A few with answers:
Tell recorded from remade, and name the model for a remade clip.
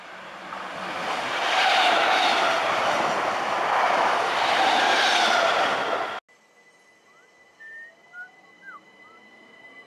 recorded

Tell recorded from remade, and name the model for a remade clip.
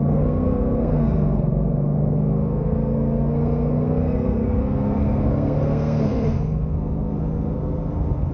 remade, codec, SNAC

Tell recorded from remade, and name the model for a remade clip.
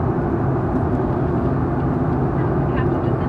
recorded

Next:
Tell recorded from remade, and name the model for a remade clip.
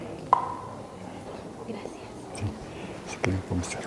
recorded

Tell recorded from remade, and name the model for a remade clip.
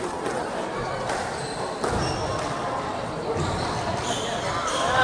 recorded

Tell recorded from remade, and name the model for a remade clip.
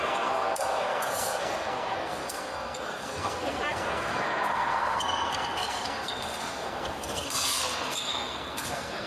remade, codec, SNAC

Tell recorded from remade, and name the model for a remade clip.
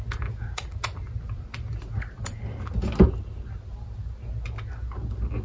recorded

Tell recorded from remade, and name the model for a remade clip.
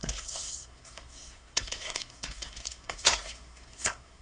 remade, codec, SNAC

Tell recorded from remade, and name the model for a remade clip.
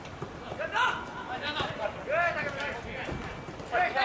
recorded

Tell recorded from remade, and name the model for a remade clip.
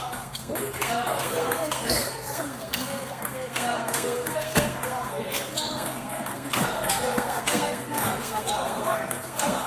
remade, codec, SNAC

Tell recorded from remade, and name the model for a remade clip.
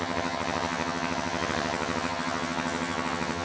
remade, vocoder, HiFi-GAN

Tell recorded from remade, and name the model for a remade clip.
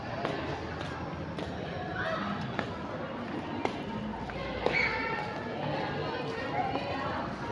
recorded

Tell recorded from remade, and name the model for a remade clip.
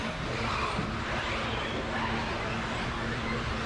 recorded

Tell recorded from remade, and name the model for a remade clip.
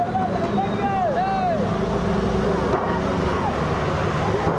recorded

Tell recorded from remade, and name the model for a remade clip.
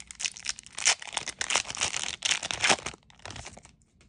recorded